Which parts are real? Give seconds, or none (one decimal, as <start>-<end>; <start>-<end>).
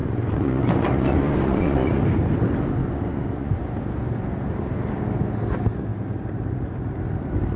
2.0-2.8; 3.5-7.6